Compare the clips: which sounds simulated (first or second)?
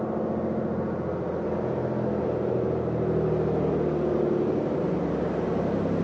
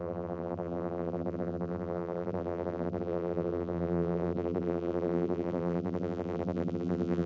second